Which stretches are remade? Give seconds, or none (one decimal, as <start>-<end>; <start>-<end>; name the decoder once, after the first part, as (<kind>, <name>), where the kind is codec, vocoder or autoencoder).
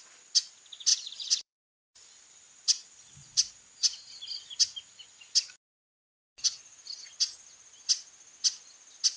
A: 0.9-3.6 (vocoder, BigVGAN v2)